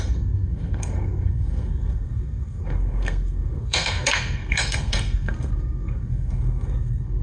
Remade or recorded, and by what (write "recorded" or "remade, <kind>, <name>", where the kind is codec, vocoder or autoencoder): remade, codec, SNAC